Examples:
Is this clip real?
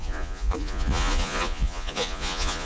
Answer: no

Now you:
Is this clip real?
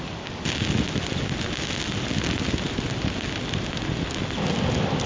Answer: yes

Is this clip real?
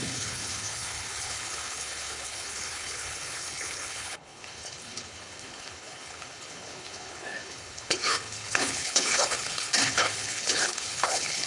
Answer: no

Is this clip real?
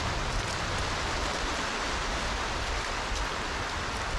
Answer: yes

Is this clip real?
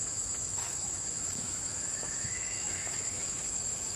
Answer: no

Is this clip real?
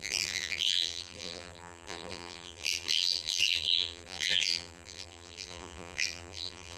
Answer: no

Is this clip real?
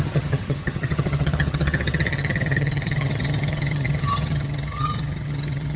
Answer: no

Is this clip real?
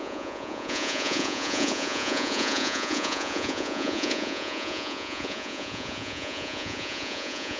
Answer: no